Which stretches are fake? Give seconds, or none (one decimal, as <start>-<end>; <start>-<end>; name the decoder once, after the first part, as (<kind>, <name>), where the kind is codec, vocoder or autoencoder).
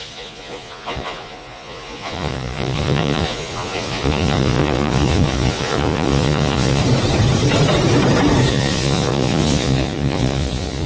0.0-6.8 (vocoder, Vocos); 8.5-10.9